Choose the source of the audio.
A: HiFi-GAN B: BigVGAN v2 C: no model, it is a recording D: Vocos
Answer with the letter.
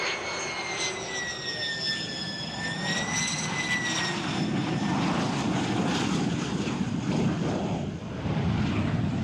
C